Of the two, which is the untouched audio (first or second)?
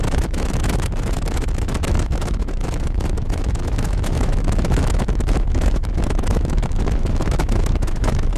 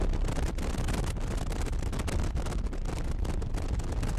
second